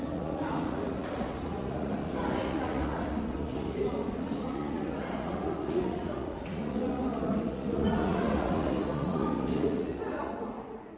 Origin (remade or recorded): remade